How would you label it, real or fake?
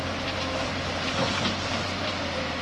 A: real